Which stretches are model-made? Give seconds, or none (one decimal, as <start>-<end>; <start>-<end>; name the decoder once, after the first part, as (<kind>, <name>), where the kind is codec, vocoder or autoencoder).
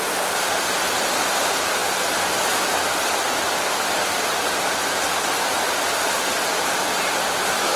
none